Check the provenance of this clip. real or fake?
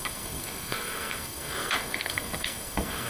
fake